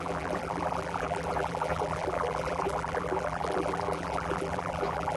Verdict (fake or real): fake